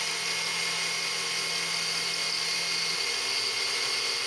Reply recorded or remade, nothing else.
recorded